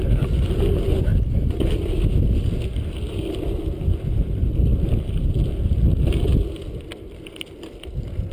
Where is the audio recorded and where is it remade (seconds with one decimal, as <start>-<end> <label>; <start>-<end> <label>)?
0.0-8.3 recorded